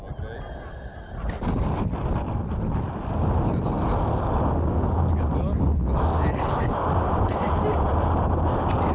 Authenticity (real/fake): real